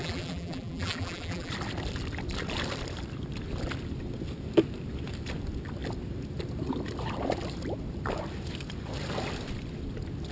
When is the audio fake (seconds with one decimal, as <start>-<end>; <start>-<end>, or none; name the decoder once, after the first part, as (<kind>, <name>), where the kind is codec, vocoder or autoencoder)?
0.0-1.5 (vocoder, BigVGAN v2)